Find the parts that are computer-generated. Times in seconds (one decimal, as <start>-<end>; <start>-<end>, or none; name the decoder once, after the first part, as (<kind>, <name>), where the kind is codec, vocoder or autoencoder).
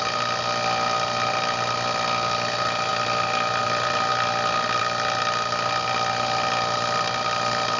none